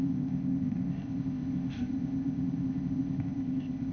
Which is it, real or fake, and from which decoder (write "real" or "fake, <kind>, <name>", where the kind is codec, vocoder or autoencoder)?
fake, codec, ZipCodec